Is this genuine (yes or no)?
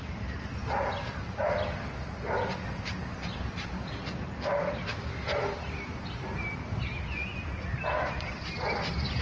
yes